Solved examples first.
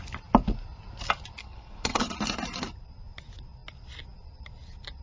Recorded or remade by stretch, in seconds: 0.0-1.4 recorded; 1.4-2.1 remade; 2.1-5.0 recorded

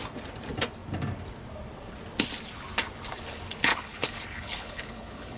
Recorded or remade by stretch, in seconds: 0.0-3.7 recorded; 3.7-5.4 remade